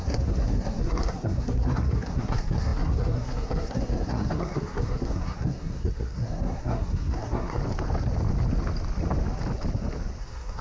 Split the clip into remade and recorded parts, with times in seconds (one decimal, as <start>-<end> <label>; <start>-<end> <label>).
0.0-7.6 remade; 7.6-10.2 recorded; 10.2-10.6 remade